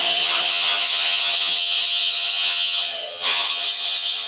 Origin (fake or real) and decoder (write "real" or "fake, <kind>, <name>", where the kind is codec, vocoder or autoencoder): fake, vocoder, HiFi-GAN